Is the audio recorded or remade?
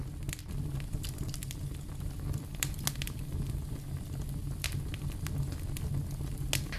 recorded